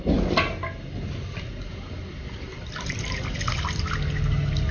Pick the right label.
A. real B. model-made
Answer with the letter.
A